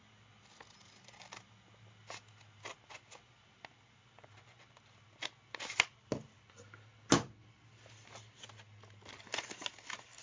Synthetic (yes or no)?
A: no